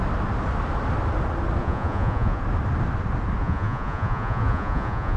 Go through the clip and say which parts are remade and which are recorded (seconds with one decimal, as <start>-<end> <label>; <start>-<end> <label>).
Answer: 0.0-1.6 recorded; 1.6-2.4 remade; 2.4-3.4 recorded; 3.4-5.2 remade

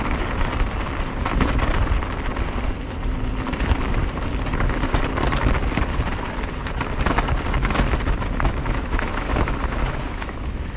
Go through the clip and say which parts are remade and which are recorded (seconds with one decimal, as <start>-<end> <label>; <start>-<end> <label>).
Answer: 0.0-8.6 recorded; 8.6-10.8 remade